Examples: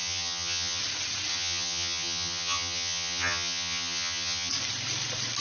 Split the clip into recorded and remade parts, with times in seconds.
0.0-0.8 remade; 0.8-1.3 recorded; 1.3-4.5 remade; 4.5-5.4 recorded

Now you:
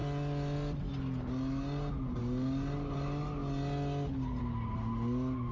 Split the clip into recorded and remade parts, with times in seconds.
0.0-5.5 recorded